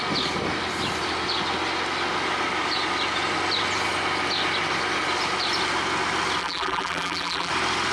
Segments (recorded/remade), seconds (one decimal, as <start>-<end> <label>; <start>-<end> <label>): 0.0-6.4 recorded; 6.4-7.5 remade; 7.5-7.9 recorded